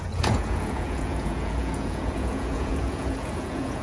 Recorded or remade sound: remade